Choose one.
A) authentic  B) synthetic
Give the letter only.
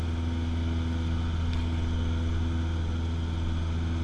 A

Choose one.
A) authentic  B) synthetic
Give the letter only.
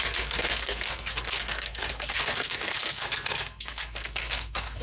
B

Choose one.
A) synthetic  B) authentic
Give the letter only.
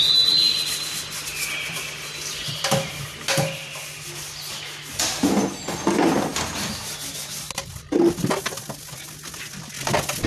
B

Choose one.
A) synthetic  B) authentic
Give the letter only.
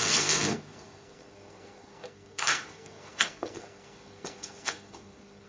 A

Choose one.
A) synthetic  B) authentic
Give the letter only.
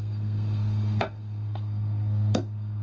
A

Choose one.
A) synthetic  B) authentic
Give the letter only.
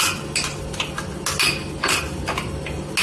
B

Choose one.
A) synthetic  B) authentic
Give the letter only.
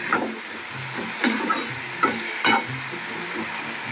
B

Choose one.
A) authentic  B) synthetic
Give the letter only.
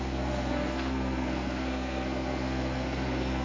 B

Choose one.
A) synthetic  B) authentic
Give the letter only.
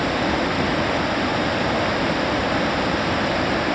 B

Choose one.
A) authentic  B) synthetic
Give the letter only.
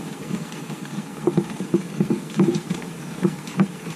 B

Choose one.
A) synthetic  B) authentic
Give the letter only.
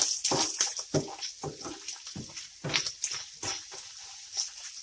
B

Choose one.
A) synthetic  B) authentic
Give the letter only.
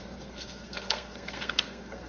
A